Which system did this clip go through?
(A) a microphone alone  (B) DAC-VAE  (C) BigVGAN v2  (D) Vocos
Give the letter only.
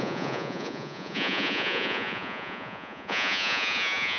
D